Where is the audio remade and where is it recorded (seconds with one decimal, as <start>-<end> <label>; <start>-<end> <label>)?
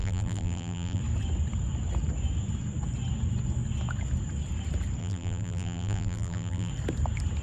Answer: 0.0-1.0 remade; 1.0-5.0 recorded; 5.0-6.7 remade; 6.7-7.4 recorded